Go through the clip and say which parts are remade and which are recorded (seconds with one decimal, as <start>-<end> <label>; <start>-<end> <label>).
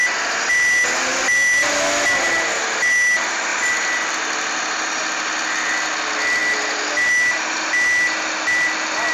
0.0-9.1 recorded